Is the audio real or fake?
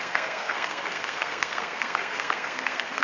fake